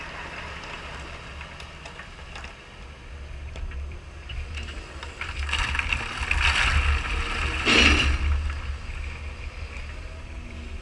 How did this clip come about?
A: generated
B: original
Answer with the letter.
B